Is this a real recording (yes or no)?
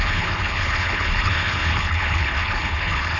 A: no